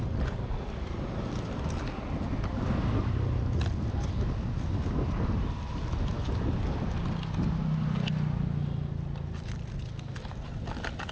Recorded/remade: recorded